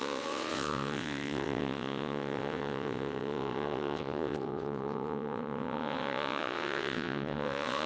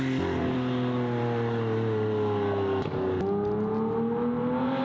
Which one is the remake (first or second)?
first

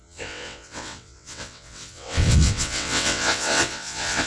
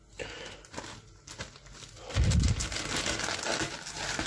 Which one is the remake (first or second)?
first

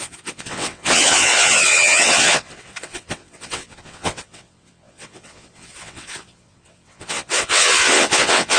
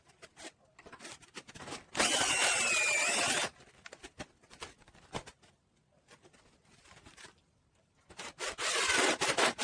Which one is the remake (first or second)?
first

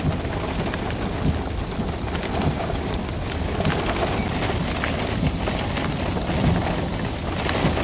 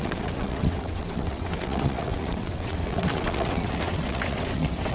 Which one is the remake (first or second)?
second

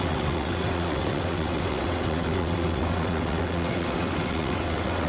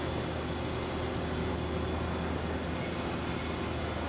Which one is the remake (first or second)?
first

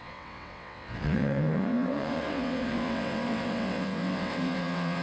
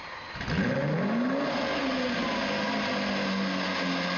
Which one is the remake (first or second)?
first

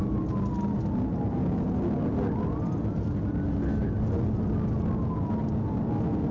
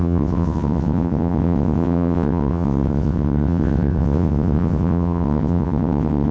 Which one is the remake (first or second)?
second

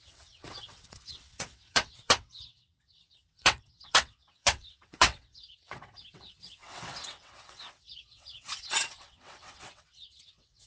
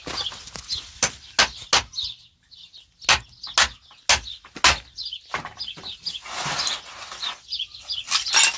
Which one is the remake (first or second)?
first